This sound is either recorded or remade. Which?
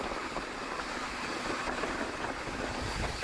recorded